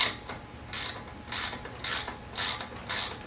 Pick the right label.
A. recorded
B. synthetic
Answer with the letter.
A